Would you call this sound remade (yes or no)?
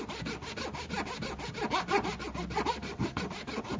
no